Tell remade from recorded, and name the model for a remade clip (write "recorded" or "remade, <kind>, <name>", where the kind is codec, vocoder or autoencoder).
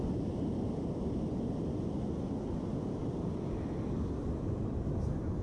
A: recorded